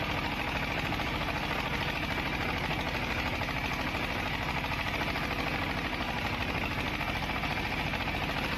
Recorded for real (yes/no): yes